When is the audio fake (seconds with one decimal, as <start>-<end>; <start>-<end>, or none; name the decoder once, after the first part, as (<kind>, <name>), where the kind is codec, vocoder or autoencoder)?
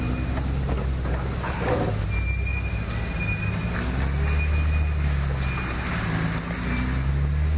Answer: none